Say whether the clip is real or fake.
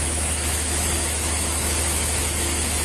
fake